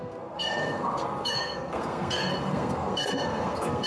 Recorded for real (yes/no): no